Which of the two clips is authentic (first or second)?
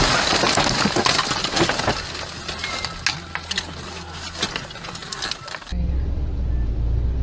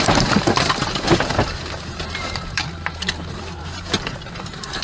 first